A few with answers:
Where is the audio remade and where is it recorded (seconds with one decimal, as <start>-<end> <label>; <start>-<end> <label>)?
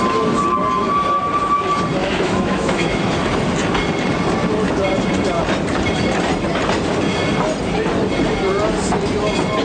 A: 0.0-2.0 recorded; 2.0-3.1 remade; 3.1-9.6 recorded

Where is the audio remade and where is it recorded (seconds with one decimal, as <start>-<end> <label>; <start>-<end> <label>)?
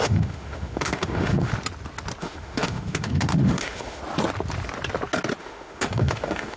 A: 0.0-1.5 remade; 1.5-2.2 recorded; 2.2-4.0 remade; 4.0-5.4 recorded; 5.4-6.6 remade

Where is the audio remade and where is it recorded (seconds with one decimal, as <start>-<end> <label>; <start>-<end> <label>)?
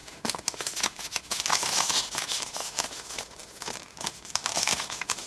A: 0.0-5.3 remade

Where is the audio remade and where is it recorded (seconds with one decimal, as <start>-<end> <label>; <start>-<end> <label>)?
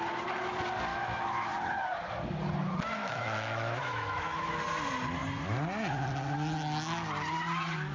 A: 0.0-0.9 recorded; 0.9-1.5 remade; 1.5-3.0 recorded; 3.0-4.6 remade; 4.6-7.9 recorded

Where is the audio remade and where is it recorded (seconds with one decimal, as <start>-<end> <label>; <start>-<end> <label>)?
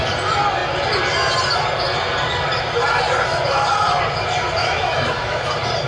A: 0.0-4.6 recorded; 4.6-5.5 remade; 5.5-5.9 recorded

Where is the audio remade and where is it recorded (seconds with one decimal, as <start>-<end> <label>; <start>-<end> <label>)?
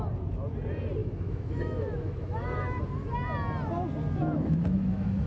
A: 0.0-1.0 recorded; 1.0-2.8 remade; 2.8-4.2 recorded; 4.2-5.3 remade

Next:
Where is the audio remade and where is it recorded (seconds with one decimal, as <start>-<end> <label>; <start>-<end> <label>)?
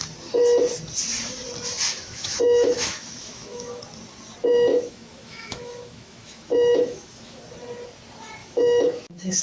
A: 0.0-1.9 recorded; 1.9-3.8 remade; 3.8-4.7 recorded; 4.7-7.4 remade; 7.4-8.4 recorded; 8.4-9.4 remade